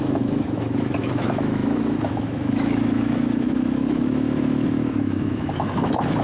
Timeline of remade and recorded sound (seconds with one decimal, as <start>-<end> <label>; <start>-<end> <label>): 0.0-6.2 remade